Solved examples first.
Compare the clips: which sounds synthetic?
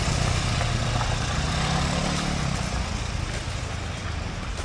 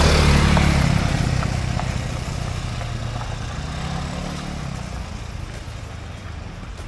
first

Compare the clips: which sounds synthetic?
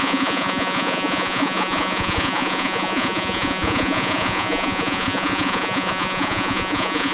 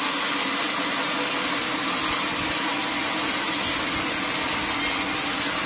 first